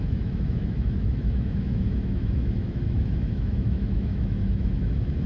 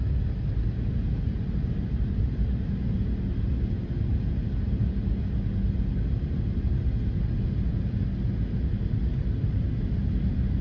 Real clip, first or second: second